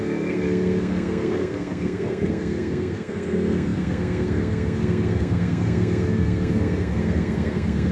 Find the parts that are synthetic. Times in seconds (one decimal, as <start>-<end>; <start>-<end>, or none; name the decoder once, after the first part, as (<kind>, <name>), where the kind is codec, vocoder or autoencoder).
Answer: 0.0-7.9 (codec, SNAC)